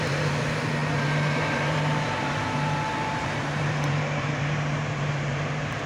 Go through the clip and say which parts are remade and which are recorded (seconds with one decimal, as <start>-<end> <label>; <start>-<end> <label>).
0.0-5.9 remade

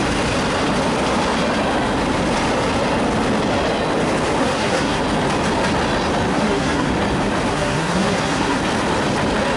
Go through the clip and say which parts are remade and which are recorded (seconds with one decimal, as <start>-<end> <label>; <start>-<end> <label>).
0.0-4.4 recorded; 4.4-5.0 remade; 5.0-6.3 recorded; 6.3-6.9 remade; 6.9-7.5 recorded; 7.5-8.6 remade; 8.6-9.6 recorded

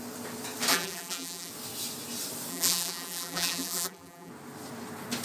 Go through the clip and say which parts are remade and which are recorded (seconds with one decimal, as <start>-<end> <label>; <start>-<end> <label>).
0.0-0.7 recorded; 0.7-1.5 remade; 1.5-2.5 recorded; 2.5-4.3 remade; 4.3-5.2 recorded

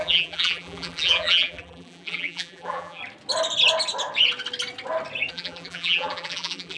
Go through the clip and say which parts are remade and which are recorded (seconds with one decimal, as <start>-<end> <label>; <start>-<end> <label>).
0.0-3.0 remade; 3.0-5.3 recorded; 5.3-6.8 remade

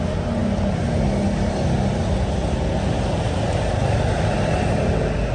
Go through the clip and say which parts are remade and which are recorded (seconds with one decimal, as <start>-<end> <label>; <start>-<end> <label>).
0.0-5.3 recorded

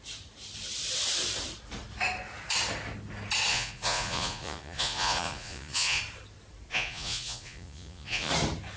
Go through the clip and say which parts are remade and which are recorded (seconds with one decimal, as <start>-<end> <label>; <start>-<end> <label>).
0.0-3.5 recorded; 3.5-6.0 remade; 6.0-6.7 recorded; 6.7-8.3 remade; 8.3-8.8 recorded